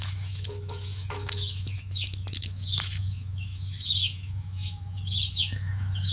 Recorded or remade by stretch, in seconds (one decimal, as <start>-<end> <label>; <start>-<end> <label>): 0.0-6.1 remade